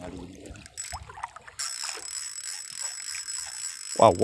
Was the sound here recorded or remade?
recorded